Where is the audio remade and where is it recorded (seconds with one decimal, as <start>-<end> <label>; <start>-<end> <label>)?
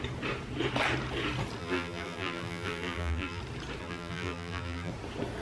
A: 0.0-1.6 recorded; 1.6-3.4 remade; 3.4-3.8 recorded; 3.8-4.9 remade; 4.9-5.4 recorded